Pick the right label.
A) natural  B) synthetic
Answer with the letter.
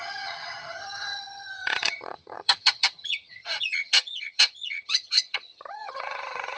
B